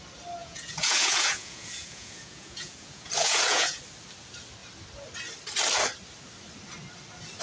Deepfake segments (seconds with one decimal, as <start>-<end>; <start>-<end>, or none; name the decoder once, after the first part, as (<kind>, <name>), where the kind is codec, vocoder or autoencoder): 0.4-3.8 (vocoder, Vocos)